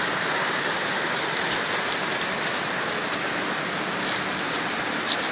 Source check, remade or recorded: recorded